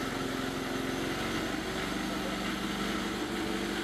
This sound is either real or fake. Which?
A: real